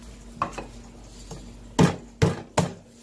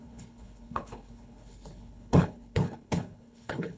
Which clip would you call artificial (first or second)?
second